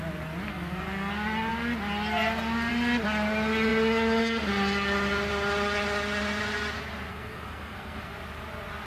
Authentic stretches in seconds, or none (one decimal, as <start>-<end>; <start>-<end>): 0.0-0.5; 1.1-7.1; 8.1-8.9